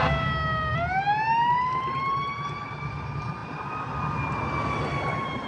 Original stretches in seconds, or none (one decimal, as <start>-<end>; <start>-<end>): 0.0-5.5